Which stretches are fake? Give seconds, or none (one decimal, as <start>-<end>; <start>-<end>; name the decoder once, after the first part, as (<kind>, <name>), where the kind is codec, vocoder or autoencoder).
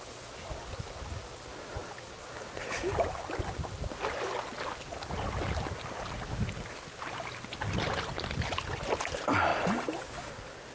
none